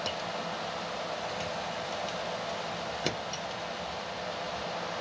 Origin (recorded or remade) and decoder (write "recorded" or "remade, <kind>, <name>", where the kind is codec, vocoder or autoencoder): recorded